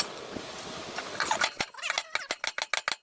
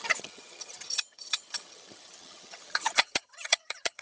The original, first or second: first